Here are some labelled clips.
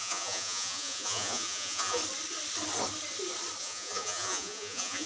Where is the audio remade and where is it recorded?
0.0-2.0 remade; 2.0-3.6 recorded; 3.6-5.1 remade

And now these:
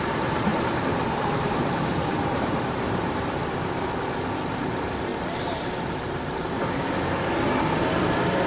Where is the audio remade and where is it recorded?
0.0-8.5 remade

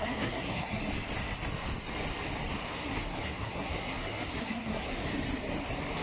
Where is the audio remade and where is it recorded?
0.0-0.8 remade; 0.8-2.7 recorded; 2.7-5.0 remade; 5.0-6.0 recorded

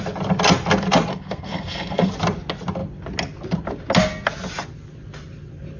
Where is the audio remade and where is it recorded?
0.0-1.1 recorded; 1.1-2.1 remade; 2.1-5.8 recorded

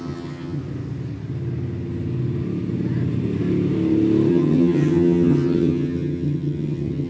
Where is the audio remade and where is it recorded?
0.0-0.6 remade; 0.6-4.3 recorded; 4.3-7.1 remade